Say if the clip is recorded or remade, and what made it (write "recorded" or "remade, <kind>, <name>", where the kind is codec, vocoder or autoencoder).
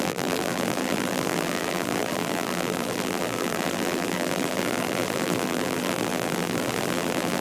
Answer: remade, vocoder, BigVGAN v2